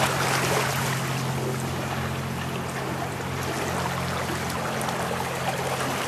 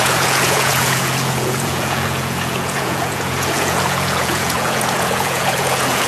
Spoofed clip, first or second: second